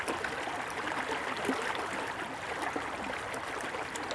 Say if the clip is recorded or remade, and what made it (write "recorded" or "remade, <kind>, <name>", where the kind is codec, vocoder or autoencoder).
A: recorded